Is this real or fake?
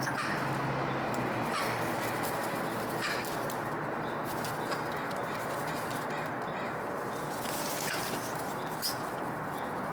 real